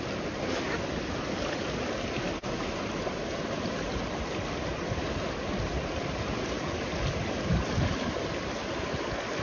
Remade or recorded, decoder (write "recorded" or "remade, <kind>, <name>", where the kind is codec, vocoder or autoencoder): recorded